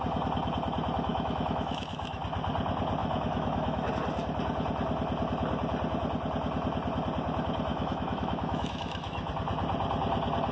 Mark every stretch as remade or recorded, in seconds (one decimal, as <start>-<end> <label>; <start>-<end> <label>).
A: 0.0-1.1 recorded; 1.1-2.2 remade; 2.2-3.0 recorded; 3.0-3.9 remade; 3.9-7.7 recorded; 7.7-9.3 remade; 9.3-10.5 recorded